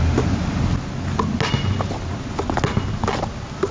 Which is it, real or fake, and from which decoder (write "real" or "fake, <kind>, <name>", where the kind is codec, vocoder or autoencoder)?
real